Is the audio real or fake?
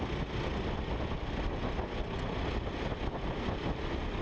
real